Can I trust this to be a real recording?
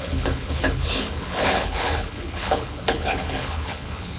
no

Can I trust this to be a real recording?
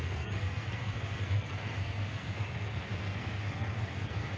no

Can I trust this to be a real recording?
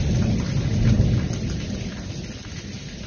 yes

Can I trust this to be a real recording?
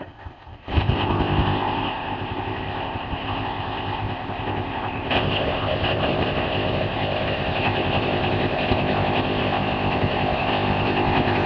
no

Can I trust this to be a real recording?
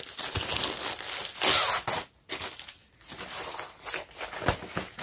yes